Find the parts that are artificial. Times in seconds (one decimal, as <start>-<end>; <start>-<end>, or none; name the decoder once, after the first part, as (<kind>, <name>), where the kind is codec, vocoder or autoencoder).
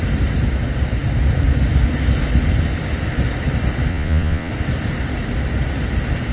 3.9-4.5 (vocoder, Vocos)